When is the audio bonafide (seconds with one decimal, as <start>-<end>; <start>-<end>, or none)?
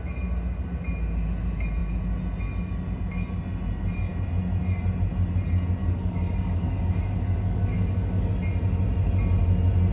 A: 0.0-5.8; 8.3-9.9